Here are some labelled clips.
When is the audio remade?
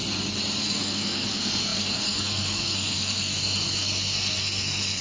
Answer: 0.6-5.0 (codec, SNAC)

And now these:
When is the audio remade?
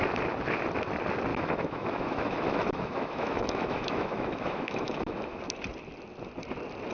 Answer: 1.3-5.4 (autoencoder, DAC-VAE)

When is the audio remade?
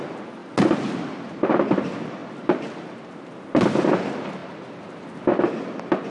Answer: none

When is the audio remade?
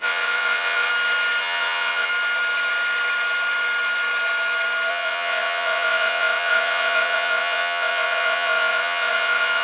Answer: 0.0-0.9 (vocoder, WaveNeXt); 1.4-2.1; 4.9-9.6